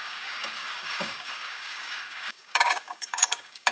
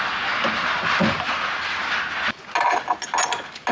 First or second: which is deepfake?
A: first